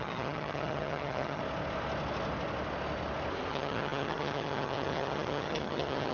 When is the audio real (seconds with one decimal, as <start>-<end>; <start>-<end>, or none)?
1.4-3.5